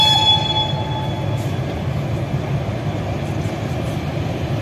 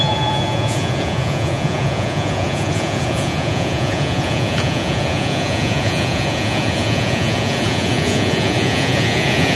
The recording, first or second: first